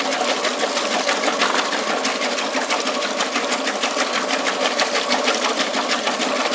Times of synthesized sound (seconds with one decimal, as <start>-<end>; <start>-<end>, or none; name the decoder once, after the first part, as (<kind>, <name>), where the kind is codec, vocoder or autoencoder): none